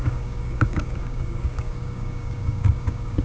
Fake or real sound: fake